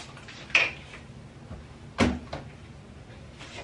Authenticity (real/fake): real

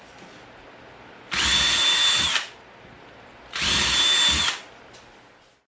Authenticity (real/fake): real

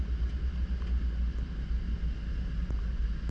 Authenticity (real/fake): real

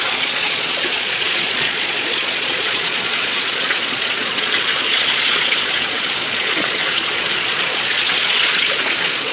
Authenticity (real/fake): fake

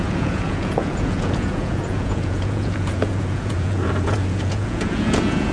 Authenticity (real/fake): fake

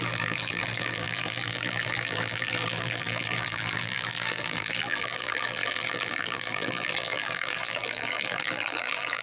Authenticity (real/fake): fake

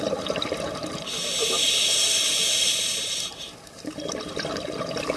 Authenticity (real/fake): real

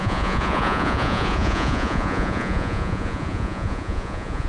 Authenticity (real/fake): fake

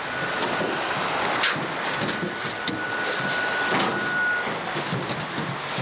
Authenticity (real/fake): real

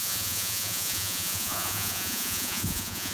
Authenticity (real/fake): fake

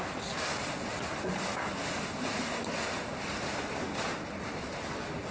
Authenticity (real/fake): real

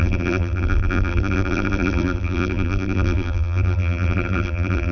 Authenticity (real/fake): fake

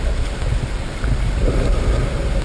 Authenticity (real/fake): real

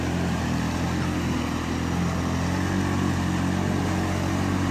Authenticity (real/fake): real